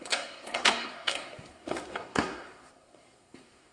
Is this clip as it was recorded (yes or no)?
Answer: no